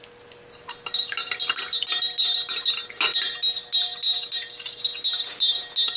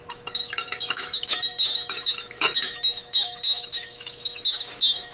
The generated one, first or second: second